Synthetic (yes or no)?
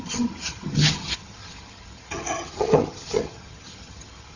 yes